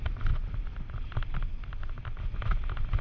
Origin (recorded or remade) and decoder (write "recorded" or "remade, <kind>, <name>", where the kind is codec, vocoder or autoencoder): recorded